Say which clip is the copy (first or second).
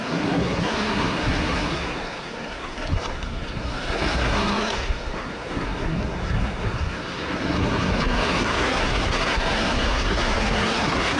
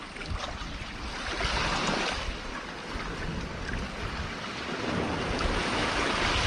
first